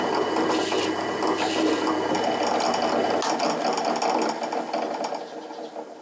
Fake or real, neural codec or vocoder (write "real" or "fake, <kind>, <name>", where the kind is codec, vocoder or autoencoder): real